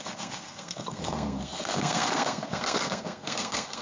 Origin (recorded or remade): remade